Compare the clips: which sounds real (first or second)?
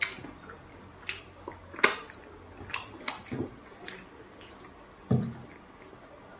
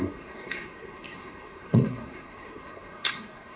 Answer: first